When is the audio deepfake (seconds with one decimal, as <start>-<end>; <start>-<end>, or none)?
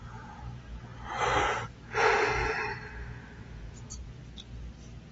0.0-0.9; 1.4-2.4; 3.4-4.2